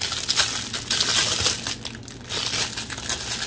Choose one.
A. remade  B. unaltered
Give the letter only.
B